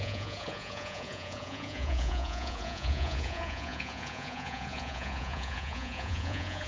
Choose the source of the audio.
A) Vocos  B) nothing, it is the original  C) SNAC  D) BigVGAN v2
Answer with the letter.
A